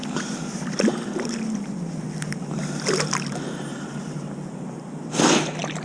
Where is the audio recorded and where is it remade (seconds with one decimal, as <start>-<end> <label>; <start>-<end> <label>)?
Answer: 0.0-5.8 recorded